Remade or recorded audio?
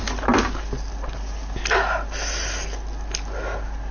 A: recorded